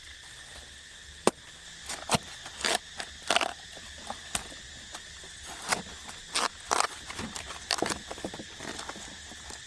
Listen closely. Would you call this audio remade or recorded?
recorded